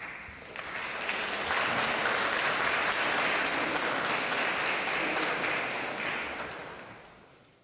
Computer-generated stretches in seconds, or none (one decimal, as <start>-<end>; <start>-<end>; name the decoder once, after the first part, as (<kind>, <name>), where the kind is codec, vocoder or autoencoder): 3.5-4.1 (vocoder, BigVGAN v2)